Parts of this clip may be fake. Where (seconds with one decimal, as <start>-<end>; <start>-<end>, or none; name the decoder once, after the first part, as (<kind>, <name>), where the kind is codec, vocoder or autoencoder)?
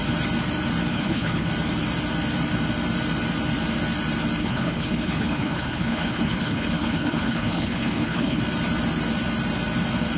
0.9-1.5 (codec, HILCodec); 4.4-8.4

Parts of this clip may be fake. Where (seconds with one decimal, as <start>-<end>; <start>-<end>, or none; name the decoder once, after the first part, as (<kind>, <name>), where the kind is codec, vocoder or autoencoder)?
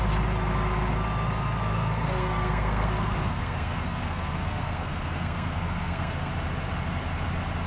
1.7-6.3 (codec, SNAC)